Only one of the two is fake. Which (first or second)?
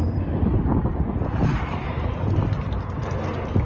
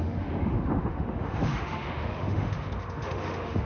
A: second